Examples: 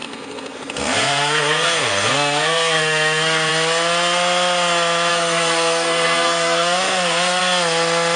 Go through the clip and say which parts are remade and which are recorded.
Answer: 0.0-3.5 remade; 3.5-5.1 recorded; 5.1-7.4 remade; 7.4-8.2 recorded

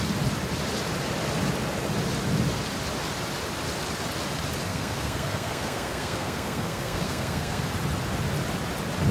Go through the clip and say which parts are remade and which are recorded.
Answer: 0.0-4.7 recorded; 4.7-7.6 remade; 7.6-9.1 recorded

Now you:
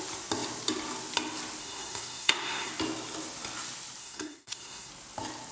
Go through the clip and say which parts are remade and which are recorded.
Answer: 0.0-1.6 recorded; 1.6-2.7 remade; 2.7-4.0 recorded; 4.0-4.9 remade; 4.9-5.5 recorded

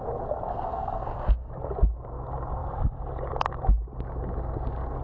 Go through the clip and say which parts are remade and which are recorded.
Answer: 0.0-0.5 recorded; 0.5-1.5 remade; 1.5-5.0 recorded

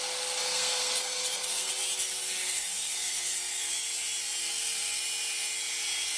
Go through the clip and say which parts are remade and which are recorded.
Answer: 0.0-0.4 recorded; 0.4-1.7 remade; 1.7-2.1 recorded; 2.1-3.7 remade; 3.7-4.4 recorded; 4.4-5.0 remade; 5.0-6.2 recorded

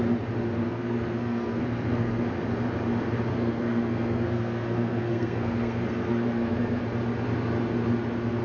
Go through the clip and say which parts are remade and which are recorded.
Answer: 0.0-0.6 recorded; 0.6-2.2 remade; 2.2-3.3 recorded; 3.3-6.8 remade; 6.8-8.4 recorded

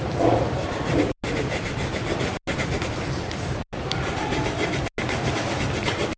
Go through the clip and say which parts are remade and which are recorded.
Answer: 0.0-6.2 recorded

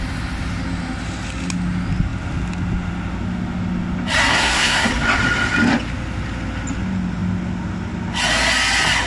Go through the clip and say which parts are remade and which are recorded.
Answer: 0.0-4.3 recorded; 4.3-4.9 remade; 4.9-9.1 recorded